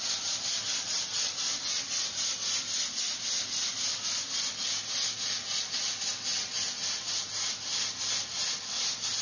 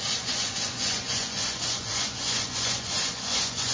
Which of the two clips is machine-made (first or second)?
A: second